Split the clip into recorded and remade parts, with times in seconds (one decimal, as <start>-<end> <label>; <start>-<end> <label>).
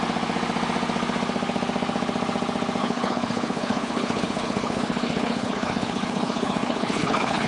0.0-2.8 recorded; 2.8-7.5 remade